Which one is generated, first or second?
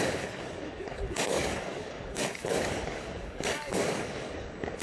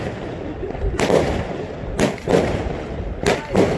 first